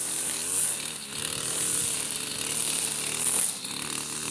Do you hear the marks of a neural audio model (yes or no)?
no